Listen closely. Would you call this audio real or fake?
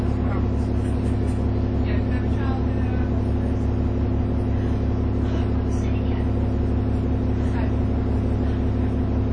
real